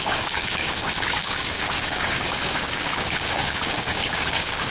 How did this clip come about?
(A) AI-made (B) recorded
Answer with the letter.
A